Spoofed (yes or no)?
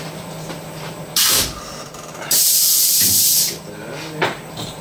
yes